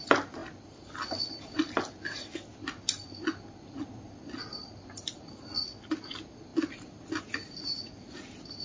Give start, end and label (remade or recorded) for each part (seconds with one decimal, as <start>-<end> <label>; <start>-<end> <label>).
0.0-8.6 recorded